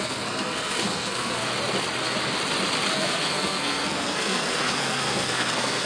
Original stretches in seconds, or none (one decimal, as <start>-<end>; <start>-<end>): 1.4-2.9